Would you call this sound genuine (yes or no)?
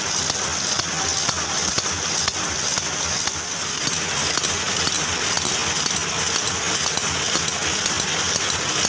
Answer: yes